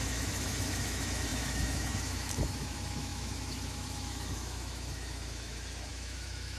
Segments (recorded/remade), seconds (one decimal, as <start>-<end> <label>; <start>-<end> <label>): 0.0-6.6 remade